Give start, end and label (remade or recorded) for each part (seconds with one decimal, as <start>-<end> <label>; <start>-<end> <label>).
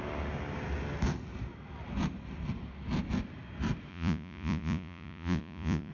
0.0-3.9 recorded; 3.9-5.9 remade